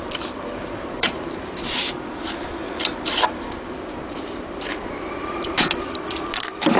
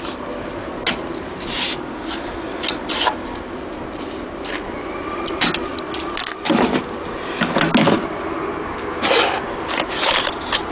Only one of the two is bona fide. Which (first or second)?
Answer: second